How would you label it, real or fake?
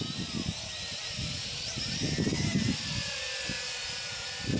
real